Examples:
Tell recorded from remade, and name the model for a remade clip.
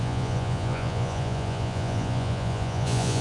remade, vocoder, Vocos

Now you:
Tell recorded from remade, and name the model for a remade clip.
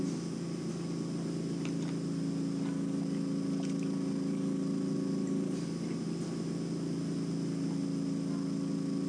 recorded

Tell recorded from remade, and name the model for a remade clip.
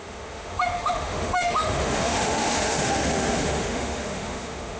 remade, autoencoder, DAC-VAE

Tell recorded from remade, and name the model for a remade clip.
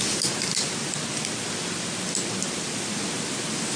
recorded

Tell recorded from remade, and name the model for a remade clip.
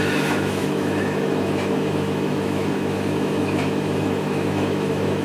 remade, autoencoder, DAC-VAE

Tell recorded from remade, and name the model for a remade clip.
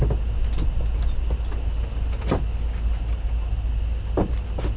recorded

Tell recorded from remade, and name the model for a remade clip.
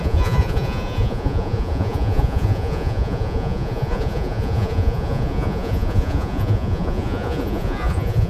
remade, vocoder, Vocos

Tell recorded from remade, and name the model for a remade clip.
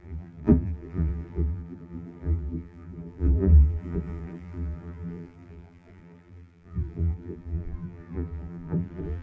remade, vocoder, BigVGAN v2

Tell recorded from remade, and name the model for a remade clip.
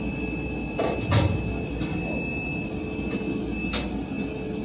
recorded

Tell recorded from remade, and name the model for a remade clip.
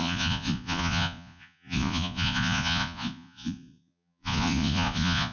remade, vocoder, Vocos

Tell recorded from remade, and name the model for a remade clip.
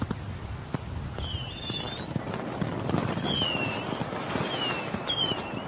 recorded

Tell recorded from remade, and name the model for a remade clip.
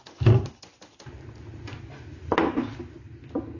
recorded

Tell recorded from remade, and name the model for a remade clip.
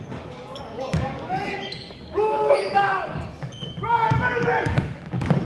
remade, codec, DAC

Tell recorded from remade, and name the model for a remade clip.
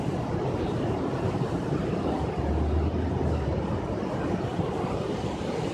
recorded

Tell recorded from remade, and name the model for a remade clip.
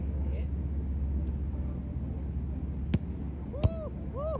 recorded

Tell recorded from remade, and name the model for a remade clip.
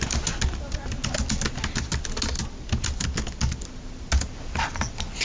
recorded